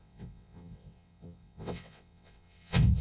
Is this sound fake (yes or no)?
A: yes